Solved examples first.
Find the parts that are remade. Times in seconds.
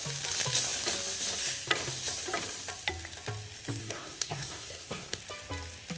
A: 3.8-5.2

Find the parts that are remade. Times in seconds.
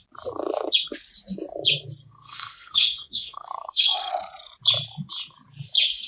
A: 2.0-4.1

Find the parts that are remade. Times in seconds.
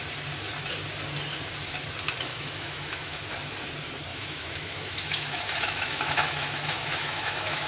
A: 2.3-3.2; 4.1-7.7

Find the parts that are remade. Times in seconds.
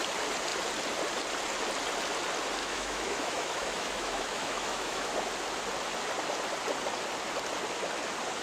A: 2.6-5.1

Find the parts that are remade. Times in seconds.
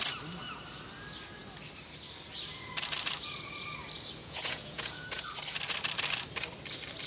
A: 4.2-5.2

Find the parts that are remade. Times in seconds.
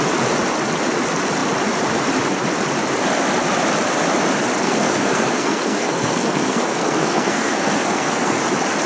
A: 4.6-8.4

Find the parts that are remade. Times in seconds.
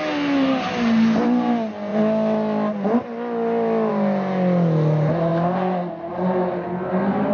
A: none